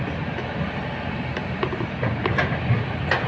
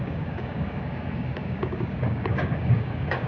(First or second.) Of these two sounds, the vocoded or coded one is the second